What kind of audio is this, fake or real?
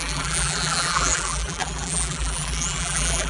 fake